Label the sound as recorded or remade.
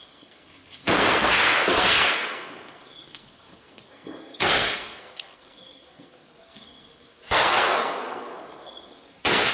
remade